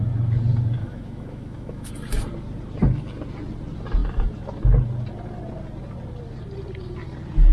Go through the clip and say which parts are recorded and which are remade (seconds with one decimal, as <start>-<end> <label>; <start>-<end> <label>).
0.0-0.8 recorded; 0.8-1.9 remade; 1.9-7.5 recorded